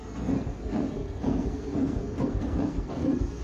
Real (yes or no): no